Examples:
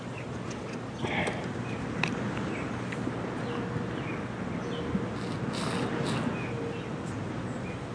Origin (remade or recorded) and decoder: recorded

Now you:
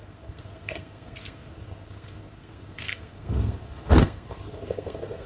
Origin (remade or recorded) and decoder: remade, codec, SNAC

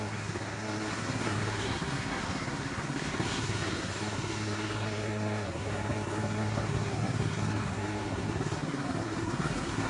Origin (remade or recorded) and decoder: remade, codec, SNAC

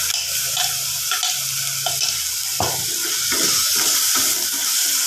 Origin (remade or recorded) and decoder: recorded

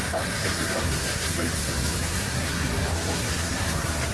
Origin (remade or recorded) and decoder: remade, codec, SNAC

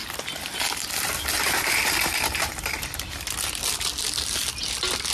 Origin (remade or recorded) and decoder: recorded